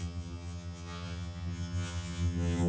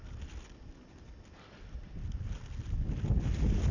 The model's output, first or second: first